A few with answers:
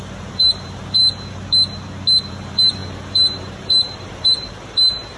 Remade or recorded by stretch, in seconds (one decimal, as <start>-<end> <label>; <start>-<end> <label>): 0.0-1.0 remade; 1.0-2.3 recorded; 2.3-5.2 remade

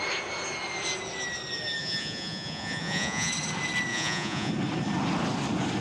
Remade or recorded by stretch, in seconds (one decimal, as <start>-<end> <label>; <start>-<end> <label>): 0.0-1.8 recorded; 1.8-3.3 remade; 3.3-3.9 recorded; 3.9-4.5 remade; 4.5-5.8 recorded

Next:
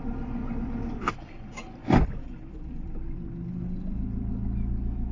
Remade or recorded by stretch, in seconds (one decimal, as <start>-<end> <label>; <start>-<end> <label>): 0.0-1.8 recorded; 1.8-3.3 remade; 3.3-5.1 recorded